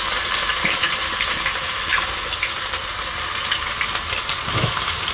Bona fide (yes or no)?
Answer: no